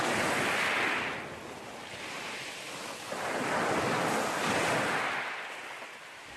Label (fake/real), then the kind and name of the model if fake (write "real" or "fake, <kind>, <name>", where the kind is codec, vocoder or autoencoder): real